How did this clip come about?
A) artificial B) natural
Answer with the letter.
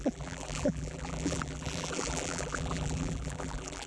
A